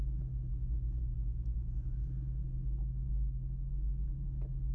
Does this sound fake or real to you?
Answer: fake